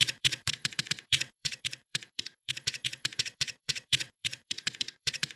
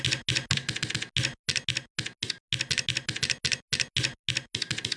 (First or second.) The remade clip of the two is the first